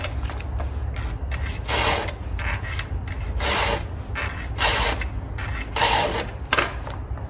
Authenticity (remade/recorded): recorded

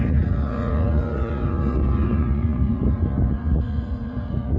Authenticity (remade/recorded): remade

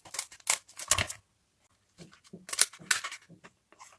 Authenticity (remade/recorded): recorded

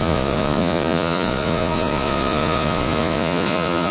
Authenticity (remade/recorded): remade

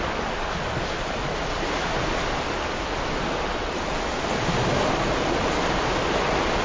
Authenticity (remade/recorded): recorded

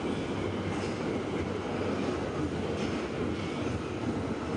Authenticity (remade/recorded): recorded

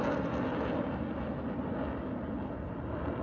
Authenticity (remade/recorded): recorded